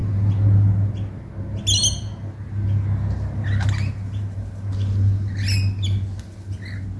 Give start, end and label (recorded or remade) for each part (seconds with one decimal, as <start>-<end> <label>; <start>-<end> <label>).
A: 0.0-7.0 recorded